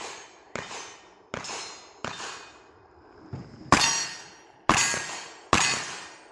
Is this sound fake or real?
real